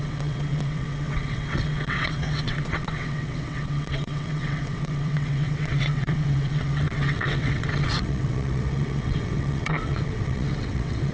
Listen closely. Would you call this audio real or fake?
fake